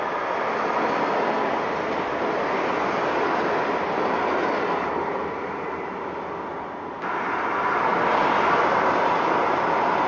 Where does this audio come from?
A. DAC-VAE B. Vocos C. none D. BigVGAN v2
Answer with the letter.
C